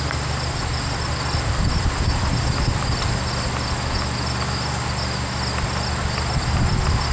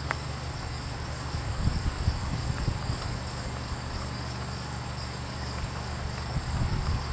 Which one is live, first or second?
first